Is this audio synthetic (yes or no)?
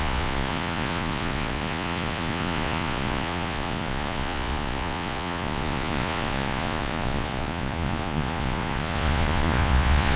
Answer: yes